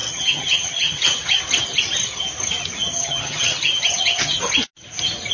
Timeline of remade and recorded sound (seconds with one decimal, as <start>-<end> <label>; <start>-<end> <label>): 0.0-1.4 remade; 1.4-2.8 recorded; 2.8-4.6 remade; 4.6-5.3 recorded